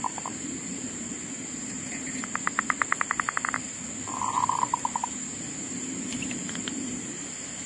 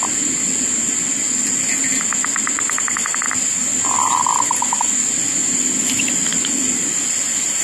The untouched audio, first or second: second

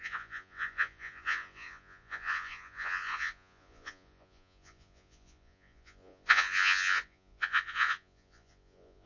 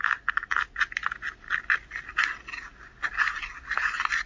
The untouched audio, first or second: second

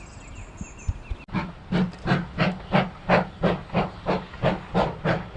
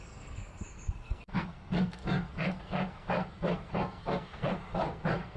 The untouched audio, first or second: first